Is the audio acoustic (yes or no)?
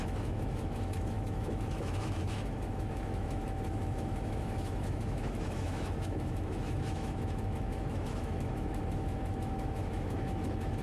no